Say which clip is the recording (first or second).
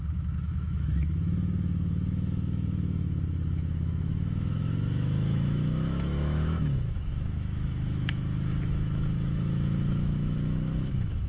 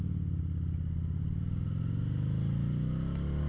second